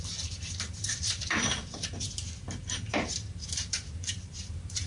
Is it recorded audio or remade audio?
remade